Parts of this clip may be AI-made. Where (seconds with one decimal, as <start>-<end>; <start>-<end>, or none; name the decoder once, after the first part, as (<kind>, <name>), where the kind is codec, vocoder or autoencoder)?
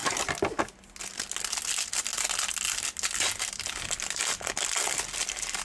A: none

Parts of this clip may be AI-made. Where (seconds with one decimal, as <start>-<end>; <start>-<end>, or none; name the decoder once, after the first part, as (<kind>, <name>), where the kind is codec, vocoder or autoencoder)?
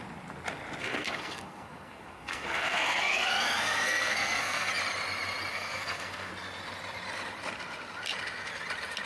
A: 0.8-4.7 (codec, SNAC); 5.5-6.3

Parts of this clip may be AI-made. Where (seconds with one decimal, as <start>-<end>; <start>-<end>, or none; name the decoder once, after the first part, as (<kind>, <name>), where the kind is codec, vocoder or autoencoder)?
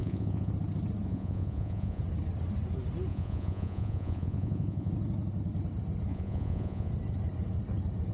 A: 0.0-0.5 (vocoder, Vocos); 1.1-2.0; 3.1-4.9; 6.1-6.9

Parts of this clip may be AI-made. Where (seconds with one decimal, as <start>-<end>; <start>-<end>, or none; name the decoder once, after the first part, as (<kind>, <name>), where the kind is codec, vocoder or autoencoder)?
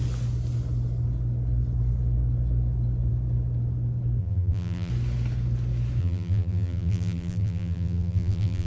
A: 4.2-4.9 (vocoder, BigVGAN v2); 6.0-8.7